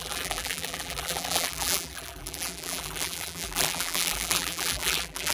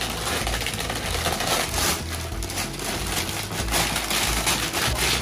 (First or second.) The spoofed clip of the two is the first